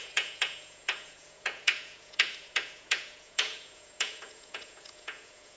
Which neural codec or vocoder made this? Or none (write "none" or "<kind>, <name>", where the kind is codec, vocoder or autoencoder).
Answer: vocoder, Vocos